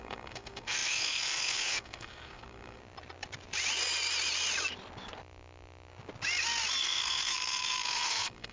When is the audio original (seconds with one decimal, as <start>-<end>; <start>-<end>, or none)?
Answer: 2.8-6.8